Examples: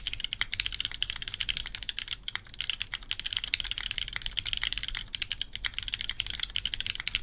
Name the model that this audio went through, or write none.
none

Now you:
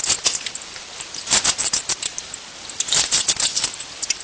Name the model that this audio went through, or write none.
none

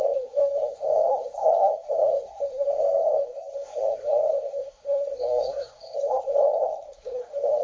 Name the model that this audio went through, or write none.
codec, SNAC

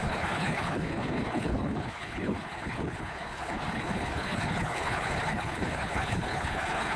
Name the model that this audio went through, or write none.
codec, HILCodec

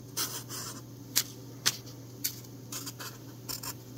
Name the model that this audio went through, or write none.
none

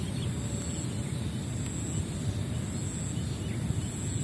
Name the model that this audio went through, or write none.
none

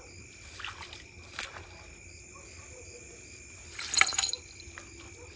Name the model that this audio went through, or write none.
none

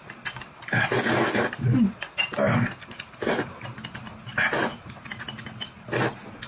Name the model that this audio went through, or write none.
none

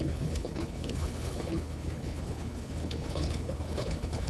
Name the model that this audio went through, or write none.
codec, HILCodec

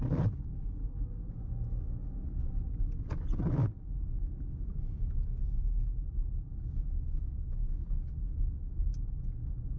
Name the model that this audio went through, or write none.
none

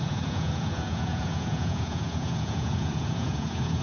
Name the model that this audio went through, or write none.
vocoder, Vocos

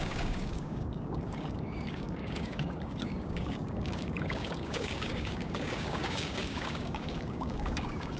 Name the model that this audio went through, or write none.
codec, DAC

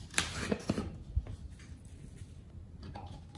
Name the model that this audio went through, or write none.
none